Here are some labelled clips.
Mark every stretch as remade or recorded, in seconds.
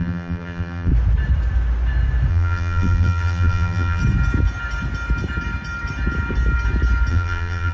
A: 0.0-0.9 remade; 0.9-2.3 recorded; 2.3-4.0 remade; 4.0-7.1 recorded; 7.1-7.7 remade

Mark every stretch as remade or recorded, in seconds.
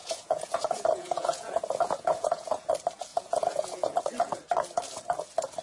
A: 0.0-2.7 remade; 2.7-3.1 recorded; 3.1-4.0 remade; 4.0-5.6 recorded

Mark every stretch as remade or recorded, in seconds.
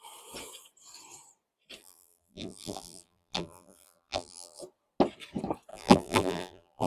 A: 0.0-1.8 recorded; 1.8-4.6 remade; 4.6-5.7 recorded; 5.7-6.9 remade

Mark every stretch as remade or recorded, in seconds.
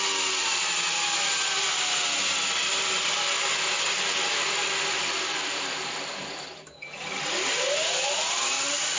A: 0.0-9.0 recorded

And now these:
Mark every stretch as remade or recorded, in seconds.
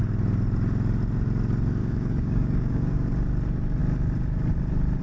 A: 0.0-1.8 recorded; 1.8-3.1 remade; 3.1-5.0 recorded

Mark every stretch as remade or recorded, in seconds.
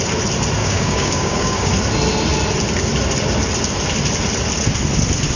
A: 0.0-0.6 recorded; 0.6-1.7 remade; 1.7-5.4 recorded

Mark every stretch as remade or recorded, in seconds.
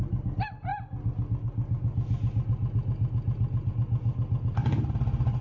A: 0.0-5.4 recorded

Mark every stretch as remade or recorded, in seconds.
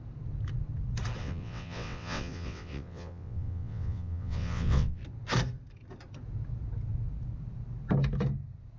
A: 0.0-1.2 recorded; 1.2-5.0 remade; 5.0-8.8 recorded